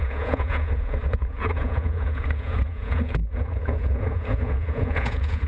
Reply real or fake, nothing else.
fake